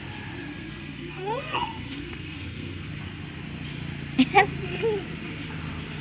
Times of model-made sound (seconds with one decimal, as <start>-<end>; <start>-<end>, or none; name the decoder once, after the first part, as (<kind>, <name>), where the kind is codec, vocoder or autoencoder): 0.5-2.9 (codec, SNAC)